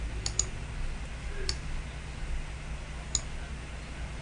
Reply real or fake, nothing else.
real